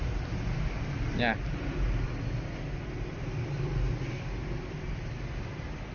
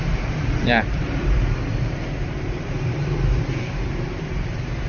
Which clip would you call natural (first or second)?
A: first